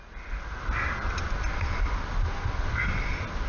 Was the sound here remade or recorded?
recorded